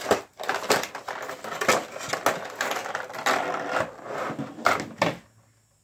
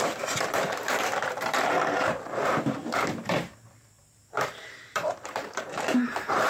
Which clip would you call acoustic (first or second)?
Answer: first